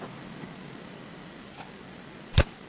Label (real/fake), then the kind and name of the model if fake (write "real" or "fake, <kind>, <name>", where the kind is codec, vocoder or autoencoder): real